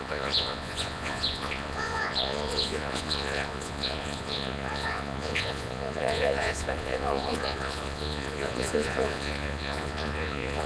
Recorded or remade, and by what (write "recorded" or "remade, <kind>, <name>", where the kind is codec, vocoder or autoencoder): remade, vocoder, Vocos